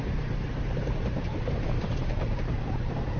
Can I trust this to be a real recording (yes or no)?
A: no